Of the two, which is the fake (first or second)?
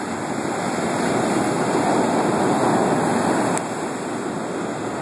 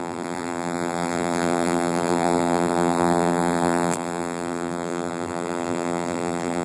second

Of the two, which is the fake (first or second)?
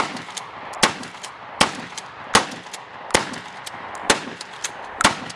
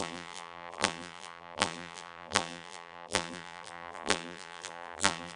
second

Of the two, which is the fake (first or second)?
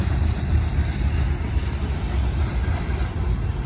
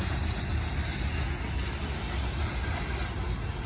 first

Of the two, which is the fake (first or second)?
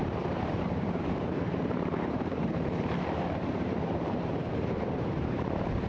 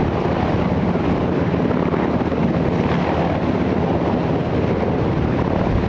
first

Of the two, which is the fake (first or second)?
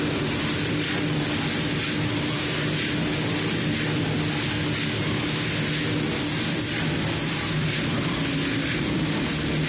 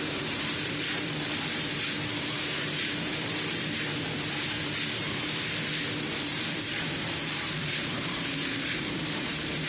second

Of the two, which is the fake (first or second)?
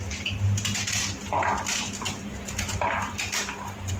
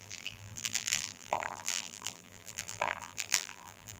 second